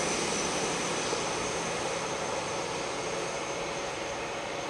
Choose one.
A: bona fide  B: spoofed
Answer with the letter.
A